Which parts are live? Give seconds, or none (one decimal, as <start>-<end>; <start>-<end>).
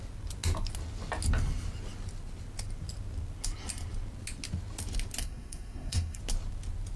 0.0-5.2; 6.2-7.0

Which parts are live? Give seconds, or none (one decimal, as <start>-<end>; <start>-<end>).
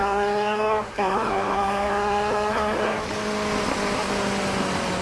3.0-5.0